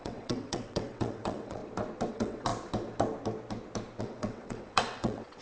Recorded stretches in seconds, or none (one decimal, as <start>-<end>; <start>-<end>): 1.6-2.1; 2.5-4.0

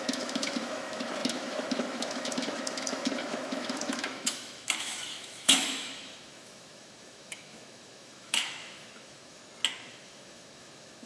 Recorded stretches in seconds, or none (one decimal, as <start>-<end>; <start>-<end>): 9.4-9.9

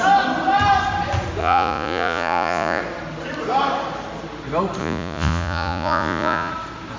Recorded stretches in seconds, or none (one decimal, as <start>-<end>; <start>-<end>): 0.0-1.4; 2.8-4.8; 6.5-7.0

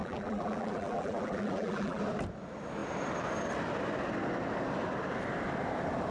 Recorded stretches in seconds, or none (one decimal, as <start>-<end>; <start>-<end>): 2.0-6.1

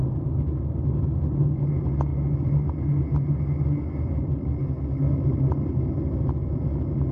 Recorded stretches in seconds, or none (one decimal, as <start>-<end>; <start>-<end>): 1.0-7.1

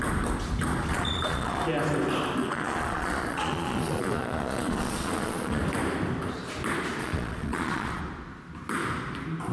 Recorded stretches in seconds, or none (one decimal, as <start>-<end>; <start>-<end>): 0.0-0.9; 1.6-2.4; 5.6-7.0; 8.0-9.5

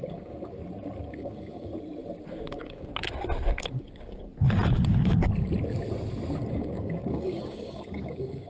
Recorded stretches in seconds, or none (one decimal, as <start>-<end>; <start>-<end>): 0.6-1.1; 1.7-2.3; 2.9-3.7; 4.3-6.5